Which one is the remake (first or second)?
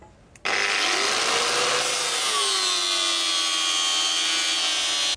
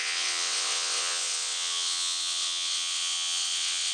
second